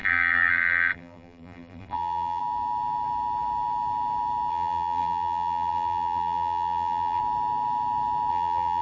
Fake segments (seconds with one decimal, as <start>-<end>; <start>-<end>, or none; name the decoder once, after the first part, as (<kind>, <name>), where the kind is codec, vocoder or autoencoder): 0.0-2.4 (vocoder, BigVGAN v2); 4.5-7.2; 8.3-8.8